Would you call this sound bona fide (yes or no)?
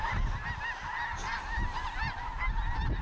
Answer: yes